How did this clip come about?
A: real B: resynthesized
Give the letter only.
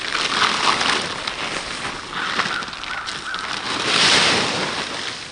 A